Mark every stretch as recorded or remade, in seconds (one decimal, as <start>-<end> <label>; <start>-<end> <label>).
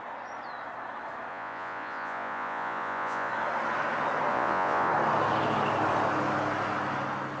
0.0-1.3 recorded; 1.3-3.3 remade; 3.3-4.3 recorded; 4.3-4.9 remade; 4.9-7.4 recorded